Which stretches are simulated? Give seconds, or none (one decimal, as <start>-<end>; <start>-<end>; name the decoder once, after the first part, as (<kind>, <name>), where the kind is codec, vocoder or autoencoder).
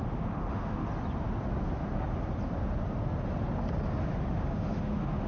0.0-0.8 (autoencoder, DAC-VAE); 4.0-5.3